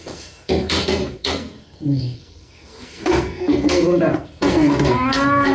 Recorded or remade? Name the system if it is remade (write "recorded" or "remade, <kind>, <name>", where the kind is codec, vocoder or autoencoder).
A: remade, codec, SNAC